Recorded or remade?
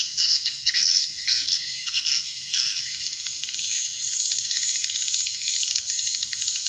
remade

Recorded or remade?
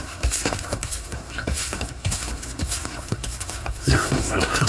remade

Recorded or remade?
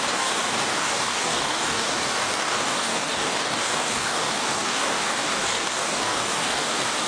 remade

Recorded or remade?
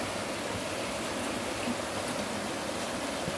recorded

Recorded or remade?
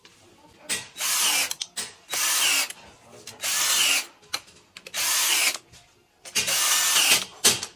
recorded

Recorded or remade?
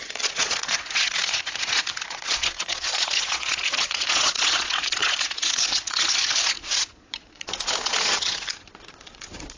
remade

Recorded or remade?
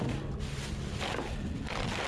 recorded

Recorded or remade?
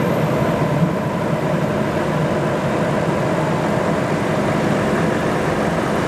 recorded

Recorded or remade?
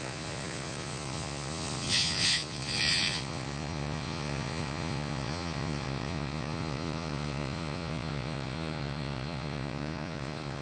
remade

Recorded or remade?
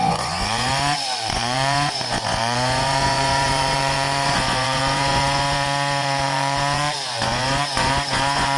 remade